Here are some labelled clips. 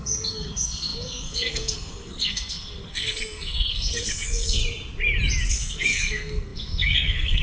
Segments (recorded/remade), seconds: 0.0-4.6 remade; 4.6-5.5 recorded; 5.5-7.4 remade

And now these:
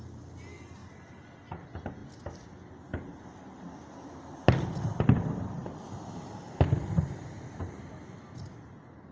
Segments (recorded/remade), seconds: 0.0-9.1 recorded

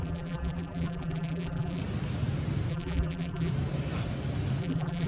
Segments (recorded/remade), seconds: 0.0-1.8 remade; 1.8-2.7 recorded; 2.7-3.5 remade; 3.5-4.6 recorded; 4.6-5.1 remade

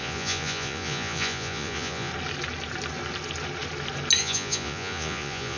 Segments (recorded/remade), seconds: 0.0-2.1 remade; 2.1-4.2 recorded; 4.2-5.6 remade

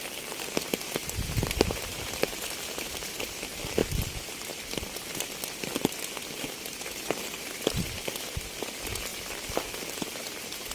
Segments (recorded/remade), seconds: 0.0-1.0 recorded; 1.0-2.0 remade; 2.0-10.7 recorded